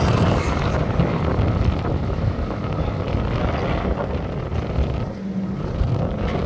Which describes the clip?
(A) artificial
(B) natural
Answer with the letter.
B